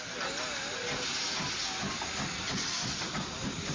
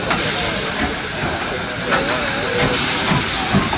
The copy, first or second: second